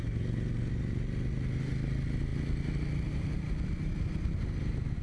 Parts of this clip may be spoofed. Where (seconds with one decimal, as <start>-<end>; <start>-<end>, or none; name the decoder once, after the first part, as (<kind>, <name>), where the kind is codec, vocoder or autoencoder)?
none